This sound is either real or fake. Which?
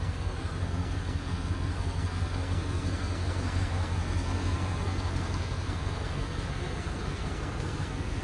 fake